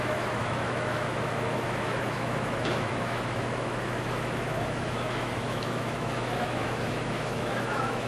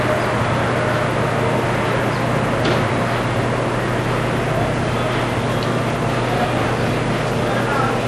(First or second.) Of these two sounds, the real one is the second